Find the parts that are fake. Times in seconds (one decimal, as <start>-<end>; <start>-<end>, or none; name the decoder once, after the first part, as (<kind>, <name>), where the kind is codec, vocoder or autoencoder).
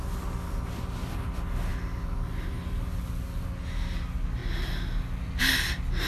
none